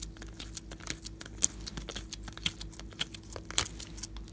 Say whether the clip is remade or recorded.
recorded